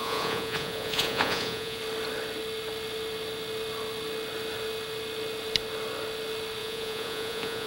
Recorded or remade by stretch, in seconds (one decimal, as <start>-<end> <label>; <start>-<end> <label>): 0.0-1.8 remade; 1.8-6.6 recorded; 6.6-7.7 remade